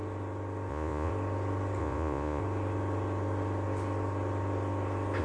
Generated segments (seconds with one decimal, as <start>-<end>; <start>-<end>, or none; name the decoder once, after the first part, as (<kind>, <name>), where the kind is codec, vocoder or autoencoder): 0.7-1.1 (vocoder, Vocos); 1.8-2.4